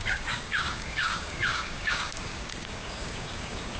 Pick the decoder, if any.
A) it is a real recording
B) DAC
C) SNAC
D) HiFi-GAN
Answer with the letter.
B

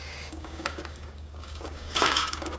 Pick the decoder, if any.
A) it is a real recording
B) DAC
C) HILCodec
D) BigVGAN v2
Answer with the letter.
B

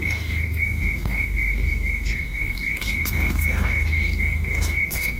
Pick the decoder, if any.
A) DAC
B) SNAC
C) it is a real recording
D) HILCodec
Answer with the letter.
A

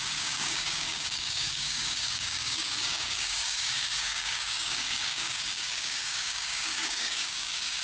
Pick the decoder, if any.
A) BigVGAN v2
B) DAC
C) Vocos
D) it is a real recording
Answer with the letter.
B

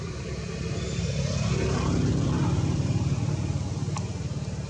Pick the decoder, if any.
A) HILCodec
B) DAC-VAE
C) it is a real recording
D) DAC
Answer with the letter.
C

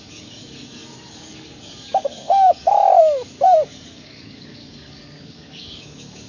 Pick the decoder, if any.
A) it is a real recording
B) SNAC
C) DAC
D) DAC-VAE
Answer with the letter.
C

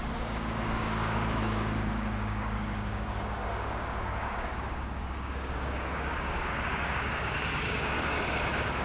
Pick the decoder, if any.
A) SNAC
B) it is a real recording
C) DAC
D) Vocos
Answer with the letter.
C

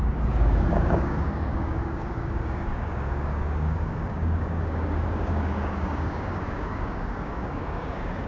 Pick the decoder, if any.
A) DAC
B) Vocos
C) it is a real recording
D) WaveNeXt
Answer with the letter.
A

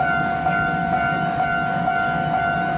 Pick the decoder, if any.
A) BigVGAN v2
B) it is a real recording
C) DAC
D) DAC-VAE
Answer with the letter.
C